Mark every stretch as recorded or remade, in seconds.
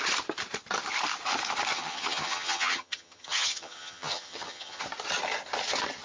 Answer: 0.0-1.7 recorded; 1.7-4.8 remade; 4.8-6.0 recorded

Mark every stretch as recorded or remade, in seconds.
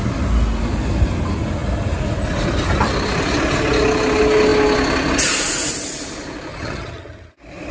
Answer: 0.0-6.5 recorded; 6.5-7.3 remade; 7.3-7.7 recorded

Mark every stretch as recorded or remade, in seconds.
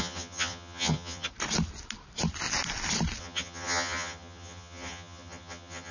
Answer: 0.0-1.3 remade; 1.3-3.2 recorded; 3.2-5.9 remade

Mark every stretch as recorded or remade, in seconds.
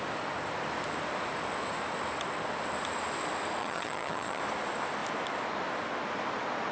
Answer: 0.0-3.6 recorded; 3.6-4.4 remade; 4.4-6.7 recorded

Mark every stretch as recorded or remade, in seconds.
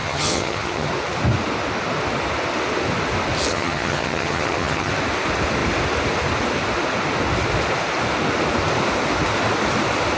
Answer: 0.0-0.9 remade; 0.9-3.5 recorded; 3.5-4.9 remade; 4.9-10.2 recorded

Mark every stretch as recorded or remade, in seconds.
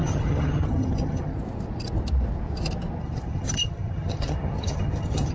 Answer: 0.0-1.3 remade; 1.3-3.0 recorded; 3.0-5.3 remade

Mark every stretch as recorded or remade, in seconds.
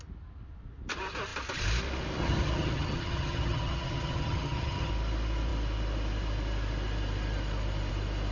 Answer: 0.0-2.2 recorded; 2.2-4.9 remade; 4.9-8.3 recorded